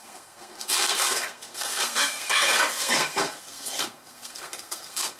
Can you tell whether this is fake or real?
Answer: fake